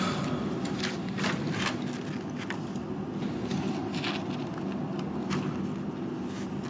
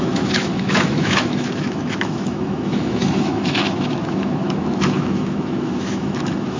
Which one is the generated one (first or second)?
second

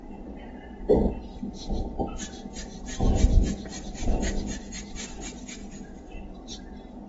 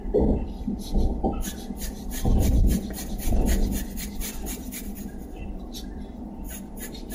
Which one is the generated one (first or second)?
second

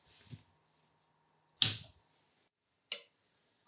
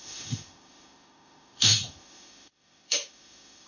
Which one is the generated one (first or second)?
second